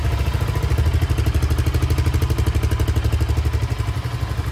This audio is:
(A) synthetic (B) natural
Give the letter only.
B